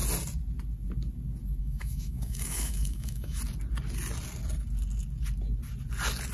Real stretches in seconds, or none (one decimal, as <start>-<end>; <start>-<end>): 0.0-1.6; 3.4-6.3